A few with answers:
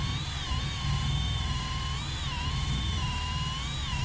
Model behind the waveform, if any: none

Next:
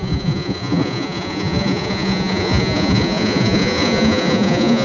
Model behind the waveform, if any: vocoder, Vocos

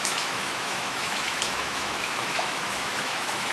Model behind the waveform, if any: autoencoder, DAC-VAE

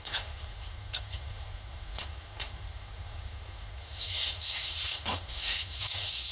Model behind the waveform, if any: codec, SNAC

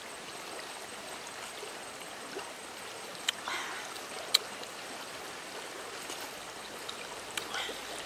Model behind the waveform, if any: none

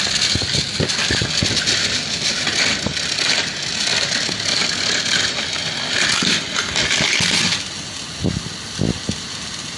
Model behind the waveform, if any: none